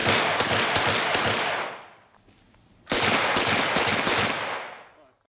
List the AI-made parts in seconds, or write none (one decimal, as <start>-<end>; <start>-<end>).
none